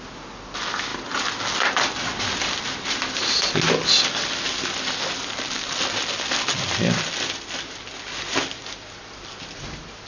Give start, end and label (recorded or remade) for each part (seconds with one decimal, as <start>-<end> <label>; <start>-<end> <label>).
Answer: 0.0-10.1 recorded